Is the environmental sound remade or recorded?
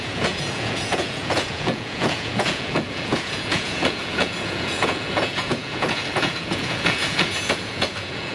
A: remade